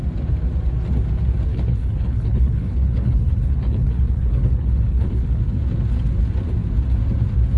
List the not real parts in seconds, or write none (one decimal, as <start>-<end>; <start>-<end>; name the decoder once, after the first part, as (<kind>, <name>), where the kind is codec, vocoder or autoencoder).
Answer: 1.5-5.4 (codec, HILCodec)